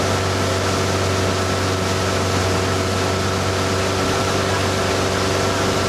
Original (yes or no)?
yes